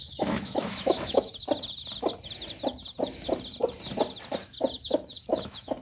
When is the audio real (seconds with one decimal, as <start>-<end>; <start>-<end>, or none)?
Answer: 1.3-4.8